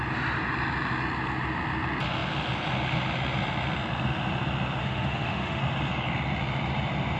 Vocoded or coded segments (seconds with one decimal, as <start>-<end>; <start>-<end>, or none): 4.8-5.6